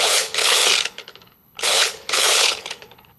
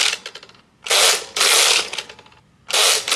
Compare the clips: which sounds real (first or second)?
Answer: second